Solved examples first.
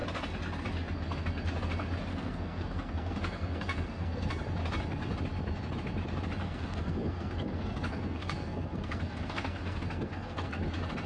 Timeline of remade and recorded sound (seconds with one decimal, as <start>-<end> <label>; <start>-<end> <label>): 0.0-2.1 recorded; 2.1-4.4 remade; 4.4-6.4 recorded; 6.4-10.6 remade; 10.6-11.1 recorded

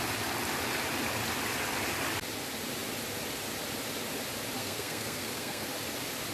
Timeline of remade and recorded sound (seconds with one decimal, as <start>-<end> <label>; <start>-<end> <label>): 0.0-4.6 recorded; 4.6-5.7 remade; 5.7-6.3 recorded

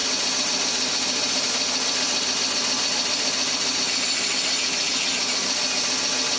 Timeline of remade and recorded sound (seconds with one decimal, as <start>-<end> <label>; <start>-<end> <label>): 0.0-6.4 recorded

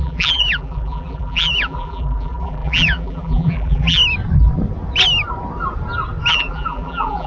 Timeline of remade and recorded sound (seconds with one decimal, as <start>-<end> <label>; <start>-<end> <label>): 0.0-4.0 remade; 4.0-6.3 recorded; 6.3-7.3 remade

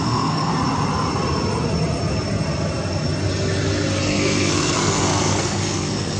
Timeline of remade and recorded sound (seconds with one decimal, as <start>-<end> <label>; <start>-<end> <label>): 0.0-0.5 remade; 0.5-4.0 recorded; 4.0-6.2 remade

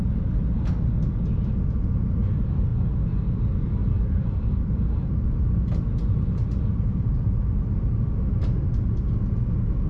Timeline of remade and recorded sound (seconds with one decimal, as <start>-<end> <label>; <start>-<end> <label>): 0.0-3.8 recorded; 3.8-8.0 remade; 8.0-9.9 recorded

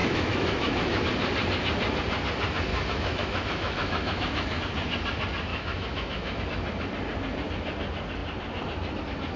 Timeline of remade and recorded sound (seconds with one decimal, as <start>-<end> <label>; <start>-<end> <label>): 0.0-1.0 remade; 1.0-2.7 recorded; 2.7-4.6 remade; 4.6-5.5 recorded; 5.5-6.4 remade; 6.4-9.4 recorded